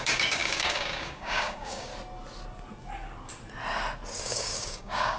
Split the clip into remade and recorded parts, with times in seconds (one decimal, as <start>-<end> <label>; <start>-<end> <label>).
0.0-1.9 remade; 1.9-4.2 recorded; 4.2-5.2 remade

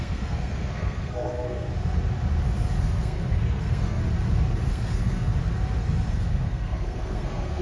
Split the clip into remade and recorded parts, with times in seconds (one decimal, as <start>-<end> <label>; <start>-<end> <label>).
0.0-1.7 remade; 1.7-2.8 recorded; 2.8-4.0 remade; 4.0-4.7 recorded; 4.7-5.3 remade; 5.3-6.1 recorded; 6.1-7.6 remade

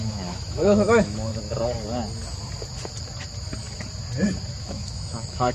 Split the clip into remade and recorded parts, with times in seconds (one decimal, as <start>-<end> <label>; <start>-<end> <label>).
0.0-1.3 remade; 1.3-4.6 recorded; 4.6-5.5 remade

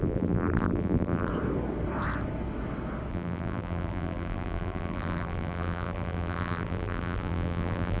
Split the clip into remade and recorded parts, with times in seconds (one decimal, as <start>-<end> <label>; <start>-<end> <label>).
0.0-1.3 remade; 1.3-3.1 recorded; 3.1-8.0 remade